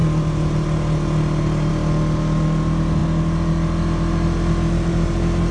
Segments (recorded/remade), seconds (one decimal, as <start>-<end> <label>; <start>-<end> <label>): 0.0-5.5 recorded